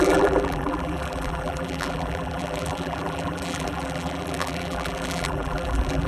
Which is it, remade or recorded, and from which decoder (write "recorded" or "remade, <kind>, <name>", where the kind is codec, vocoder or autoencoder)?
remade, vocoder, BigVGAN v2